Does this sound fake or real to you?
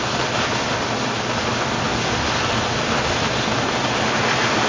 real